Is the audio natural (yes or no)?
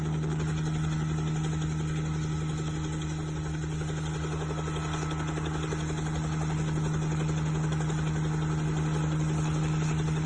yes